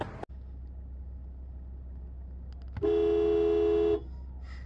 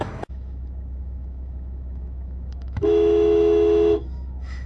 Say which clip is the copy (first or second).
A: second